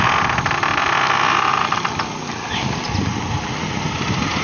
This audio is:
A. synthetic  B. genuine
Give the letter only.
B